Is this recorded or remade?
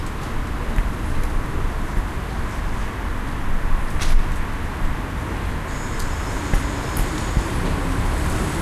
recorded